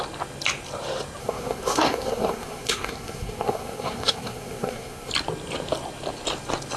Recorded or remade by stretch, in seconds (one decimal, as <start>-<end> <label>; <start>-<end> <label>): 0.0-1.2 recorded; 1.2-5.1 remade; 5.1-6.8 recorded